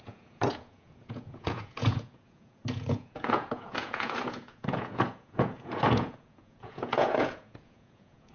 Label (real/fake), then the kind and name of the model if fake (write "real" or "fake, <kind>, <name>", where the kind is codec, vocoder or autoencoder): fake, vocoder, Vocos